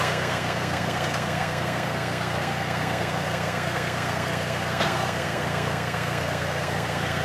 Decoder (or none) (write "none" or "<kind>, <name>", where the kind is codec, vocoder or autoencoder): codec, SNAC